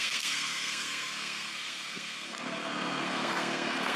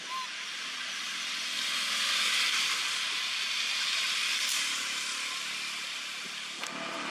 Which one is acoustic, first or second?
second